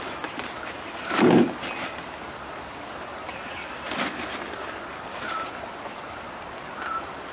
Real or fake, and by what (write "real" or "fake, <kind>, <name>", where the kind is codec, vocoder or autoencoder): real